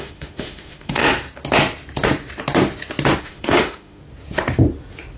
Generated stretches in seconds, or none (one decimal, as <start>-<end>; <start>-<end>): 0.0-1.0; 3.2-4.0